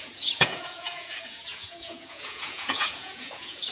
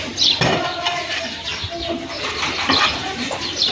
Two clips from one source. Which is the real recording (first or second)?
second